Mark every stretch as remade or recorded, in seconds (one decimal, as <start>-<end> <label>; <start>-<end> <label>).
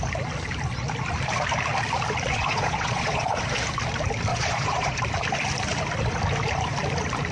0.0-2.3 recorded; 2.3-3.4 remade; 3.4-4.3 recorded; 4.3-5.0 remade; 5.0-7.3 recorded